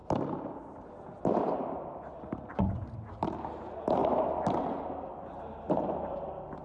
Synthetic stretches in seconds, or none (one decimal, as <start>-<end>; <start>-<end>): 2.5-3.0